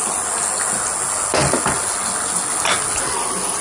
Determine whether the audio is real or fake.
real